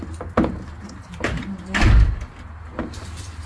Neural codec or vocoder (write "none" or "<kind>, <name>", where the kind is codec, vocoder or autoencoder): none